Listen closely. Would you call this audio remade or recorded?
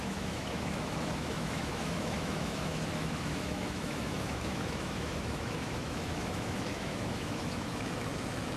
remade